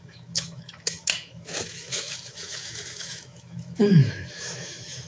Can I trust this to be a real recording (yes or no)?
no